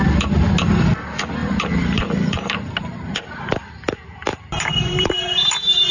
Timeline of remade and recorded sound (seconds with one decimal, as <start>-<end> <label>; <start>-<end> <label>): 0.0-1.4 recorded; 1.4-3.1 remade; 3.1-4.3 recorded; 4.3-5.9 remade